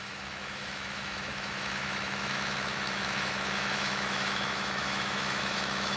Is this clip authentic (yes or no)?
no